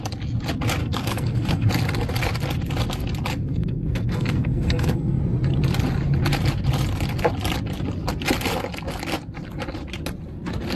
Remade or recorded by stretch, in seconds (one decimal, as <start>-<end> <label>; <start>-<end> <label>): 0.0-0.8 recorded; 0.8-1.7 remade; 1.7-3.3 recorded; 3.3-5.2 remade; 5.2-10.8 recorded